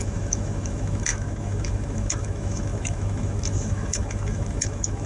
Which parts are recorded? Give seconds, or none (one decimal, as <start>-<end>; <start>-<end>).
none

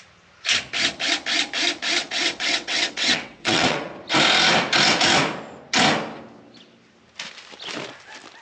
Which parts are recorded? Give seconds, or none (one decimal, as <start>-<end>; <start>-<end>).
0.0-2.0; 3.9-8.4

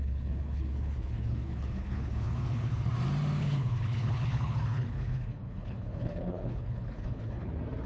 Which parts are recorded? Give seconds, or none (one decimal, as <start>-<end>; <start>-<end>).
2.9-3.4; 7.5-7.9

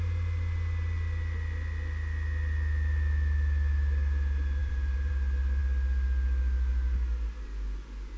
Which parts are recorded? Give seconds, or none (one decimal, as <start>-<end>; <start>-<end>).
0.0-4.6; 5.1-8.2

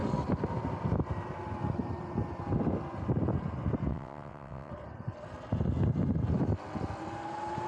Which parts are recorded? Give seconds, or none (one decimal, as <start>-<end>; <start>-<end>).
0.0-3.9; 4.7-7.7

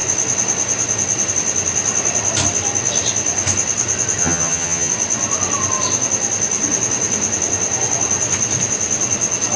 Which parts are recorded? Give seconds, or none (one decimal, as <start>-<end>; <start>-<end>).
0.0-4.2; 4.9-9.6